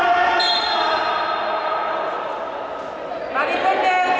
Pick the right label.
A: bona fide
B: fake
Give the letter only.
A